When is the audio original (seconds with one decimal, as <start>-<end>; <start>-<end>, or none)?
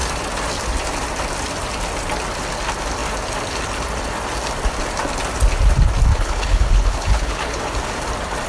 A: 0.0-6.1; 7.6-8.5